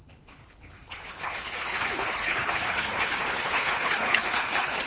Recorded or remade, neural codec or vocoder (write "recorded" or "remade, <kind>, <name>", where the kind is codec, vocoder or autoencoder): remade, codec, HILCodec